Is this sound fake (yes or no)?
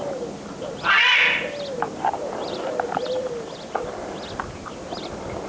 no